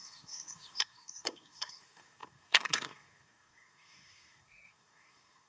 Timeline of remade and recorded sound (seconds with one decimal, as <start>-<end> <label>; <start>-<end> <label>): 0.0-5.5 remade